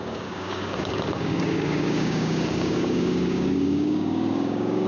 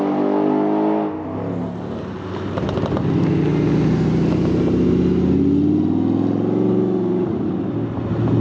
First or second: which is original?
second